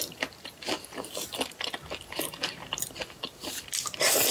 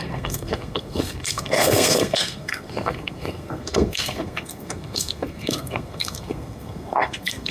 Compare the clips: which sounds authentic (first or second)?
first